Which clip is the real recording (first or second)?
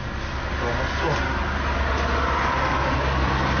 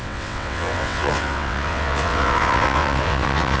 first